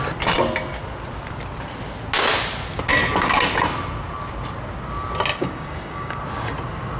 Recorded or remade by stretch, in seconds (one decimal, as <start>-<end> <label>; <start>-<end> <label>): 0.0-5.3 recorded; 5.3-6.2 remade; 6.2-7.0 recorded